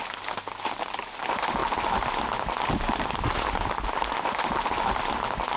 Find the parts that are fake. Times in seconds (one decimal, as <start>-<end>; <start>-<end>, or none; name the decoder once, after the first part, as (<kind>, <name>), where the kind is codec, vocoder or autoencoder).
none